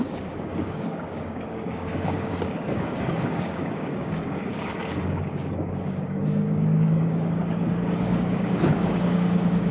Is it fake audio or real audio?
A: fake